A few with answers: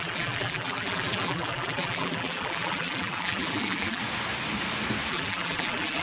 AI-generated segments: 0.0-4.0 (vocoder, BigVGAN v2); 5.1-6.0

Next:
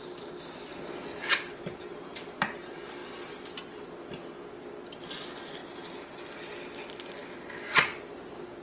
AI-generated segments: none